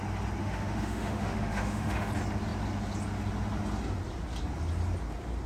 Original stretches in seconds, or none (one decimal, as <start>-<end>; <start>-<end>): 0.0-0.4; 2.1-5.5